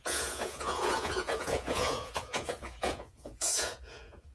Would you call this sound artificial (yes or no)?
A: yes